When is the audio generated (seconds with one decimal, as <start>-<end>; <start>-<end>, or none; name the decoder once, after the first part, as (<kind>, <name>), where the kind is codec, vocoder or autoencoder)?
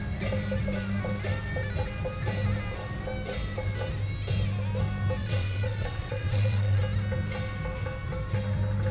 5.2-6.8 (vocoder, WaveNeXt)